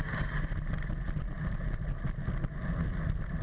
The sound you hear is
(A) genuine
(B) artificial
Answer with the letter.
A